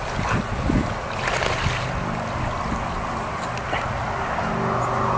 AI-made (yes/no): no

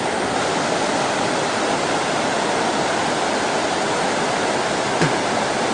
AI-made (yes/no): no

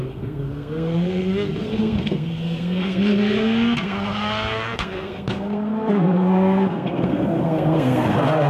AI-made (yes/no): yes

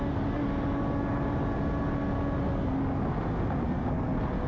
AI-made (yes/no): no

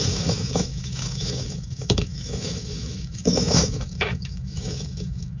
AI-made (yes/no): yes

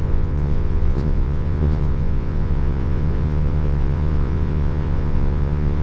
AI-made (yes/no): yes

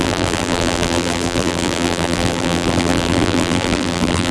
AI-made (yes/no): yes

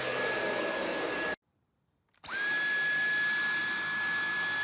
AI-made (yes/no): no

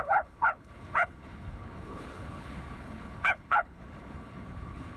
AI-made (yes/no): yes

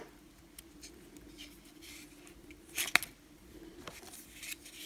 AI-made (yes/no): no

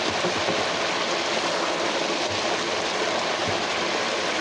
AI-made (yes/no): no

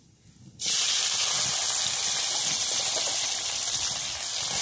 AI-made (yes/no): no